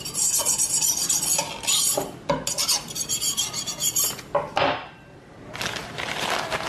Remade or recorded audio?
recorded